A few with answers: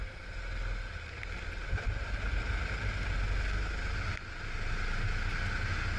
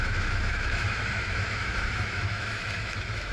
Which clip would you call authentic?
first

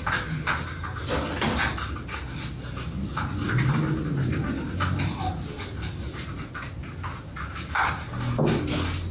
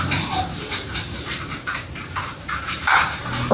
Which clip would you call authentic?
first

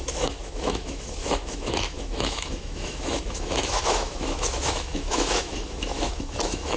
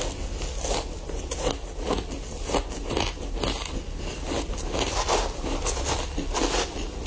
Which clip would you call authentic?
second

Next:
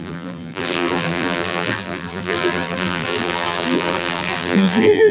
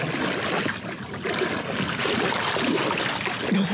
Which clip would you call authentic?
second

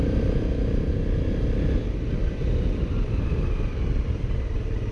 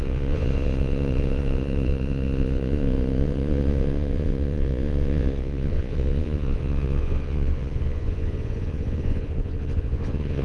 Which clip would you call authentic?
first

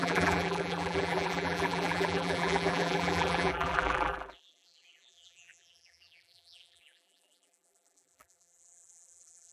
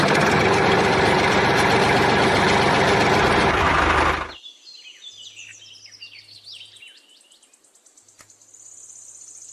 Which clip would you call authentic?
second